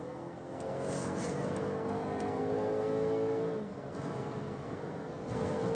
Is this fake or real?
fake